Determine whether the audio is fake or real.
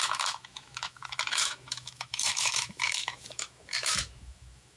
fake